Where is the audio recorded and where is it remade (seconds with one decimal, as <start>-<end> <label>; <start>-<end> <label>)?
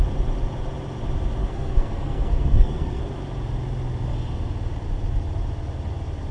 0.0-1.4 recorded; 1.4-3.0 remade; 3.0-6.3 recorded